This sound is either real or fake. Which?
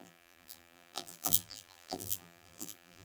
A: fake